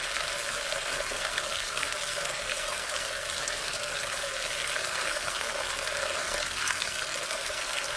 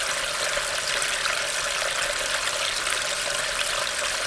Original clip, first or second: second